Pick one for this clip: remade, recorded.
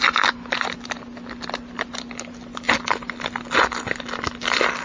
recorded